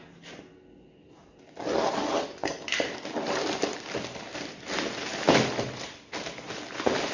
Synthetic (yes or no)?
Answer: no